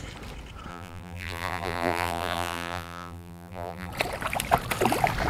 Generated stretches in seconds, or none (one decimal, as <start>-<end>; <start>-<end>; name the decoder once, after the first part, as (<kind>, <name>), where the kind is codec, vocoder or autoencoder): 0.7-3.9 (vocoder, BigVGAN v2)